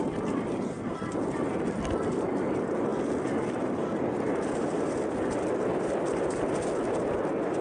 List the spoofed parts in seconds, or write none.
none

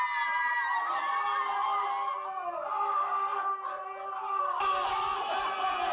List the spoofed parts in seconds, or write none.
none

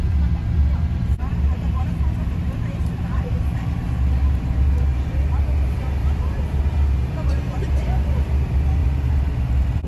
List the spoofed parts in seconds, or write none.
0.4-3.7 (vocoder, BigVGAN v2); 8.8-9.3

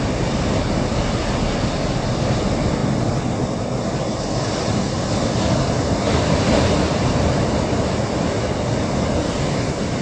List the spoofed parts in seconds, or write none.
none

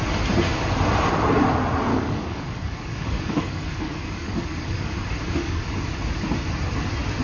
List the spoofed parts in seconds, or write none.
1.9-5.6 (codec, DAC)

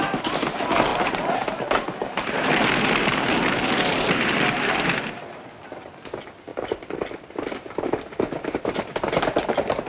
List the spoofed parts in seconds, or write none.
0.9-5.0 (vocoder, BigVGAN v2)

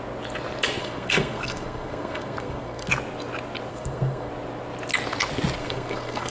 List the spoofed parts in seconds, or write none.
0.8-2.9 (codec, SNAC); 3.7-4.3; 5.6-6.3

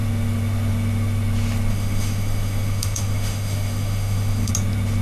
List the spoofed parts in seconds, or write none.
1.7-4.5 (autoencoder, DAC-VAE)